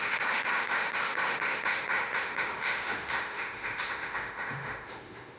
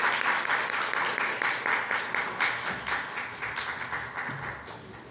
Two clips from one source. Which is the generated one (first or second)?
first